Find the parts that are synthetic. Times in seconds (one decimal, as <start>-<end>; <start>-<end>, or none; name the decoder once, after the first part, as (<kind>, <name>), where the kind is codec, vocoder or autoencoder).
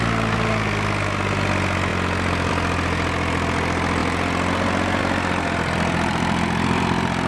none